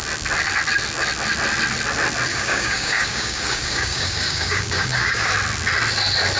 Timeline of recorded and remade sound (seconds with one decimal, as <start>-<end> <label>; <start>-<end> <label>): 0.0-2.3 recorded; 2.3-5.3 remade; 5.3-6.4 recorded